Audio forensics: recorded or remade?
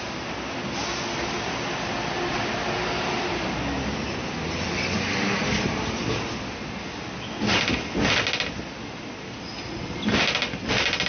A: recorded